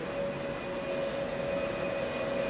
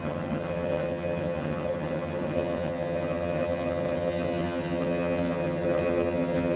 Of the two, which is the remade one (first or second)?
second